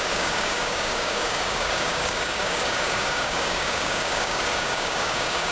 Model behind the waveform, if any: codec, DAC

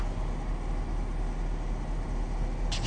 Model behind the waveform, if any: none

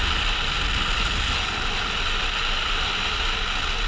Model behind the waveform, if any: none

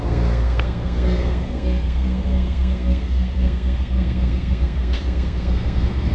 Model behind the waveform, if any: codec, SNAC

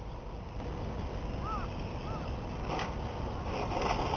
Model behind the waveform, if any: none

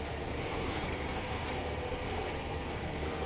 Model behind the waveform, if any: codec, SNAC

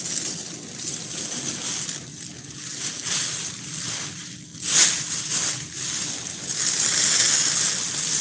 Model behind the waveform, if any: none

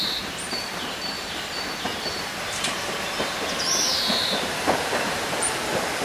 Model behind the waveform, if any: vocoder, BigVGAN v2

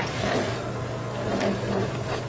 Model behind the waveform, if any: none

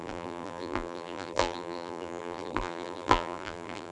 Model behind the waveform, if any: vocoder, BigVGAN v2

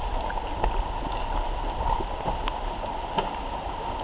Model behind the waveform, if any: none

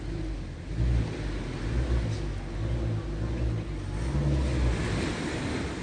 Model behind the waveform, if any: none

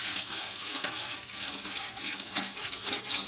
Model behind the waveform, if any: codec, SNAC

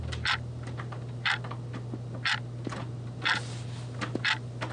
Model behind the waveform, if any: none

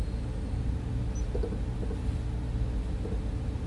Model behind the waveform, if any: none